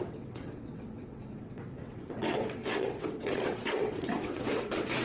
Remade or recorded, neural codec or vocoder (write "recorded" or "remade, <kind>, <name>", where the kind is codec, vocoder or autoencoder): remade, vocoder, WaveNeXt